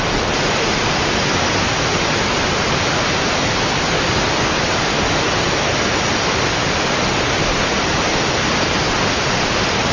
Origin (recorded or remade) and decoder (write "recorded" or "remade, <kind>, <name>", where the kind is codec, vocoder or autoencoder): recorded